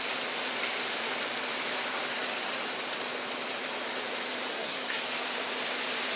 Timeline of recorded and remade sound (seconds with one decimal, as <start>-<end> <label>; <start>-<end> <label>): 0.0-4.5 recorded; 4.5-5.0 remade; 5.0-6.2 recorded